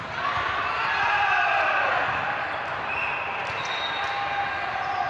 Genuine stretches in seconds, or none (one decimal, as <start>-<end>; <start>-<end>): 0.0-5.1